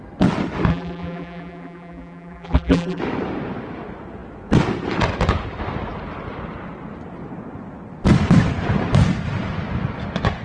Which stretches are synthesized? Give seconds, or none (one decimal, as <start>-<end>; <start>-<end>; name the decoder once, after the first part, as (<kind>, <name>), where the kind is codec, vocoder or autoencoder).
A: 0.7-3.0 (vocoder, BigVGAN v2)